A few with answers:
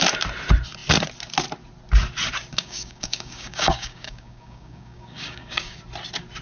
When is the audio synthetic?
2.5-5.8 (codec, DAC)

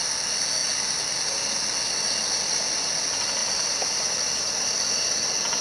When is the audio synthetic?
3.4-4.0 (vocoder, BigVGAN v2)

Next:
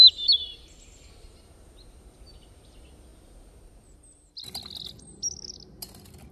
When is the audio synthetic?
0.0-1.1 (vocoder, BigVGAN v2)

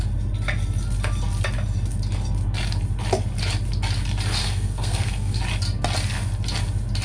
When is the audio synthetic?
4.4-5.4 (codec, SNAC)

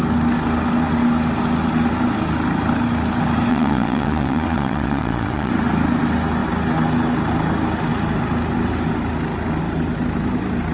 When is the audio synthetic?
3.5-5.5 (vocoder, WaveNeXt)

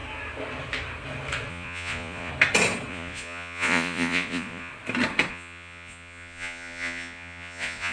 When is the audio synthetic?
1.5-2.3 (vocoder, Vocos); 2.9-4.7; 5.3-7.9

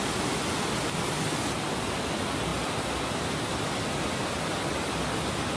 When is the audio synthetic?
none